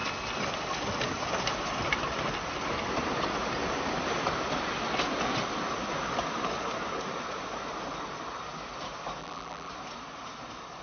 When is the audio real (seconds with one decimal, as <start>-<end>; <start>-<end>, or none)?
0.0-9.2; 9.7-10.8